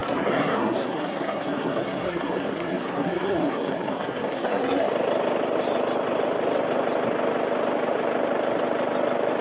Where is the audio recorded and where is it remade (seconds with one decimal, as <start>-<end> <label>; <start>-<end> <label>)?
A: 0.0-4.9 remade; 4.9-9.4 recorded